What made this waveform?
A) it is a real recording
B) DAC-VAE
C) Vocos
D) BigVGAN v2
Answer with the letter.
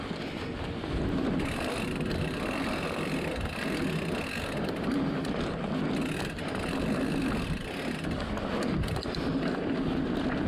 A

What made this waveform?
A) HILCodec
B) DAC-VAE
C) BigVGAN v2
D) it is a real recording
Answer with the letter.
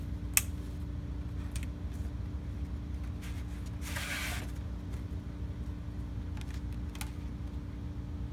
D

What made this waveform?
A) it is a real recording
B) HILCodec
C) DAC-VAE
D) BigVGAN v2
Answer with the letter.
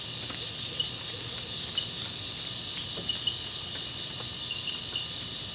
A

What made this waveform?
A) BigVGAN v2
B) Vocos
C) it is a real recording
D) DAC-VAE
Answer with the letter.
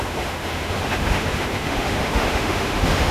D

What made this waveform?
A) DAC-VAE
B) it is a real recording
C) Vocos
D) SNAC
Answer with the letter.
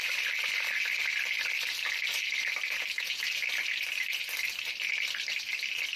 B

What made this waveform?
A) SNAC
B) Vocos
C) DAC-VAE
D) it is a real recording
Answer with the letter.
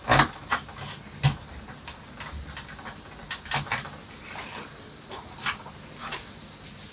D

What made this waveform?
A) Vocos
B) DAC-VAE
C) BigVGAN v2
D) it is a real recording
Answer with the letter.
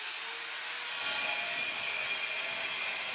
D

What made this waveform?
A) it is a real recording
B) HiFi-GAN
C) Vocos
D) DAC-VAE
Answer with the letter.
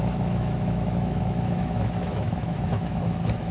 D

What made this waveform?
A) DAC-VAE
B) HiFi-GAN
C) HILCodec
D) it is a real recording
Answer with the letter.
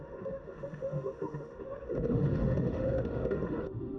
A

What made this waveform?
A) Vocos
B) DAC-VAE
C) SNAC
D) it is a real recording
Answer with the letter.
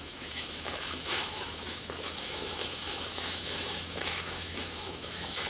B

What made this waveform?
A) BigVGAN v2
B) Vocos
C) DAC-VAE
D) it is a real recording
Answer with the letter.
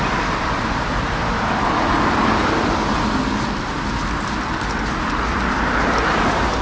D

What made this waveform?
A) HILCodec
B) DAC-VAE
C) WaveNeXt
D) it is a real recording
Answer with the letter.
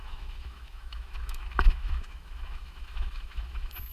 B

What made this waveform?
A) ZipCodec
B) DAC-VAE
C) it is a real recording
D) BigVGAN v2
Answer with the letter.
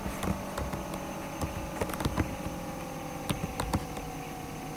C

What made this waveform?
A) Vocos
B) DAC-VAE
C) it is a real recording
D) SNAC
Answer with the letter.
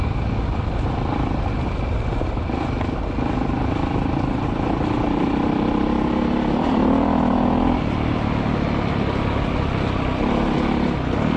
C